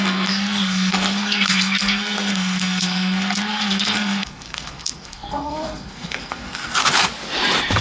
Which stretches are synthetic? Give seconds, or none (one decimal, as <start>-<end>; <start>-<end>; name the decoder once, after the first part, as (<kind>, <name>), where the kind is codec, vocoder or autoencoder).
0.0-6.8 (codec, SNAC)